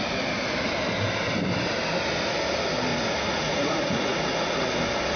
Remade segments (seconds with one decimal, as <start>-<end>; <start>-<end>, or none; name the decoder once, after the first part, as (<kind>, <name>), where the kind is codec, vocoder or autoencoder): 2.9-4.4 (vocoder, Vocos)